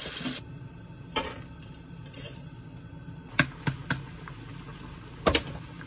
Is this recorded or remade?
recorded